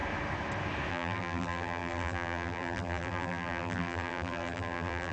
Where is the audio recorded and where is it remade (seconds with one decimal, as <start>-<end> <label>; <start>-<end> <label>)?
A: 0.0-0.9 recorded; 0.9-5.1 remade